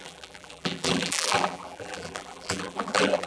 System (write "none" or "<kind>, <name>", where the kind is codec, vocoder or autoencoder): vocoder, BigVGAN v2